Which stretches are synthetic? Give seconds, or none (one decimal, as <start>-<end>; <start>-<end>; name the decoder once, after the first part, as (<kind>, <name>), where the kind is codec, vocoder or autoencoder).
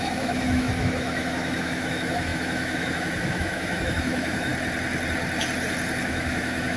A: 0.0-4.5 (autoencoder, DAC-VAE); 6.0-6.8